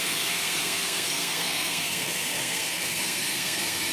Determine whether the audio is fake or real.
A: fake